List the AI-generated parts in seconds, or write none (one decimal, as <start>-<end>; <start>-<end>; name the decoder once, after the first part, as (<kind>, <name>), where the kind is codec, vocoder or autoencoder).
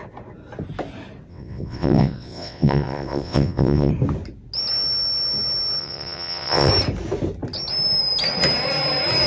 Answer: 1.3-3.9 (vocoder, WaveNeXt); 5.8-6.7